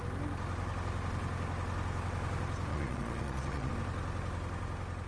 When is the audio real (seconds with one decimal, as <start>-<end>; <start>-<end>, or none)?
0.0-2.7; 3.7-5.1